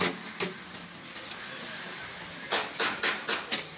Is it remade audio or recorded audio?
recorded